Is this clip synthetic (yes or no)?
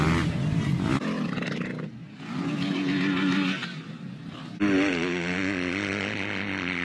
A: no